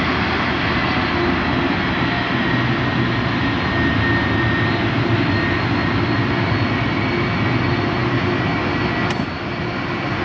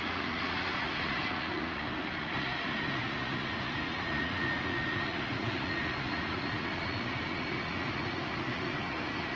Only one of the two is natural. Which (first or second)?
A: first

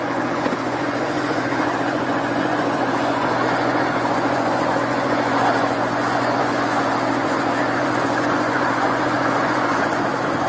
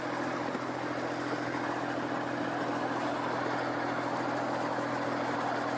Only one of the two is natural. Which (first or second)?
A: second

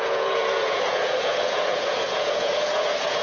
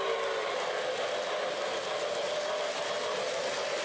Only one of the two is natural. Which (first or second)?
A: second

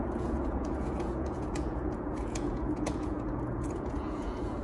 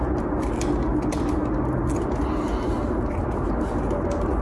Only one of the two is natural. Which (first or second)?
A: second